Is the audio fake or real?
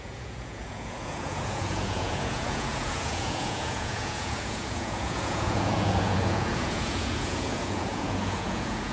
fake